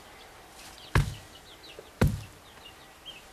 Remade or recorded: recorded